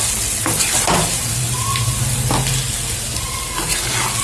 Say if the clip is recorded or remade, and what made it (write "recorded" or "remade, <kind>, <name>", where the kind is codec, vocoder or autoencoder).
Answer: recorded